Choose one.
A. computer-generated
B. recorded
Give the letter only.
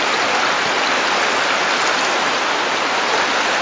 B